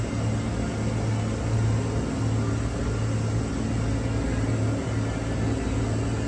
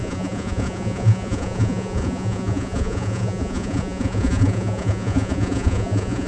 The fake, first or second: second